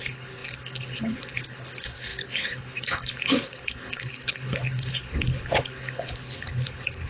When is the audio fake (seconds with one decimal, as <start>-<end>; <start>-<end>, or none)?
0.0-7.1